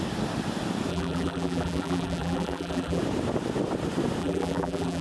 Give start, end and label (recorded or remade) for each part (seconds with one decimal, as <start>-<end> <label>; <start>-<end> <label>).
0.0-0.9 recorded; 0.9-3.0 remade; 3.0-4.2 recorded; 4.2-5.0 remade